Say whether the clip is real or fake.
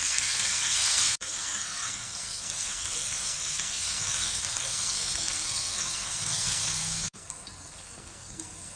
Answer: fake